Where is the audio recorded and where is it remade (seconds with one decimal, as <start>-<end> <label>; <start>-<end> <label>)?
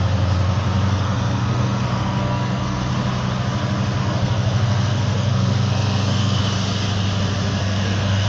0.0-0.9 recorded; 0.9-2.9 remade; 2.9-4.0 recorded; 4.0-6.4 remade; 6.4-7.6 recorded; 7.6-8.3 remade